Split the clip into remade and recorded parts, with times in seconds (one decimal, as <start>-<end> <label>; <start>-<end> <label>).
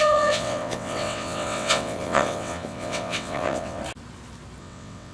0.0-3.8 remade; 3.8-4.6 recorded; 4.6-5.1 remade